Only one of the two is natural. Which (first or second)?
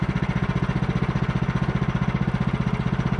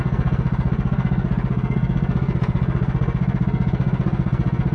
first